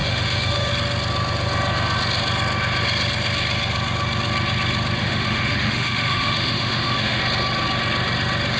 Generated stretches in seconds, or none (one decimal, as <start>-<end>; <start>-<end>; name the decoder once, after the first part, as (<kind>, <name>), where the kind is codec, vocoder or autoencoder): 0.0-0.7 (autoencoder, DAC-VAE); 5.0-7.2